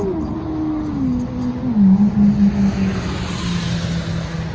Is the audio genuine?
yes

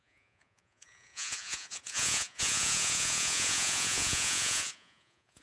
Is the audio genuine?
no